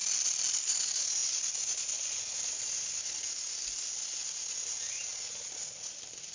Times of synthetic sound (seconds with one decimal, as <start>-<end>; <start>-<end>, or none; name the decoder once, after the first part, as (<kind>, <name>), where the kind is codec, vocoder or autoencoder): 0.0-0.5 (vocoder, BigVGAN v2)

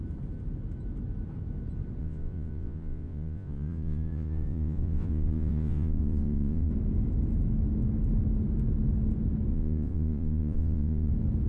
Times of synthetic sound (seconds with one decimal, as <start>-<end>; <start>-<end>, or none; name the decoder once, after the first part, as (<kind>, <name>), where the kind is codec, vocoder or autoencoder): 2.0-6.7 (vocoder, Vocos); 9.5-11.1

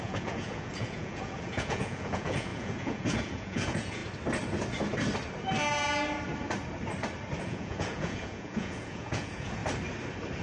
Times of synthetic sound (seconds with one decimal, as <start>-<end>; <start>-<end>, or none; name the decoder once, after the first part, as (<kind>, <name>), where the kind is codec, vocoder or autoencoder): 0.0-4.0 (vocoder, Vocos); 7.4-9.6

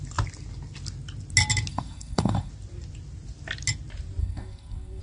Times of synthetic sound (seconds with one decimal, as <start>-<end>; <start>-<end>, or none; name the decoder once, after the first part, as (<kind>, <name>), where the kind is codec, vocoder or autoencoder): 1.7-2.5 (codec, SNAC); 4.2-5.0